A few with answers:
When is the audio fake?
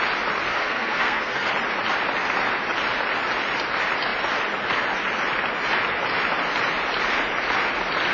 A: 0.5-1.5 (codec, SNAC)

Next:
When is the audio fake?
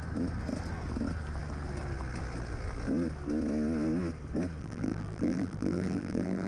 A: 4.6-6.5 (vocoder, BigVGAN v2)